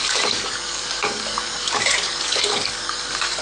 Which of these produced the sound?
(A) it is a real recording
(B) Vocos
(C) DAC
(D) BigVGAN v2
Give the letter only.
C